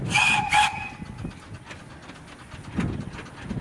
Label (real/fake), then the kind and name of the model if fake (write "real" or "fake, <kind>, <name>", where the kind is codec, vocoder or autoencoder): real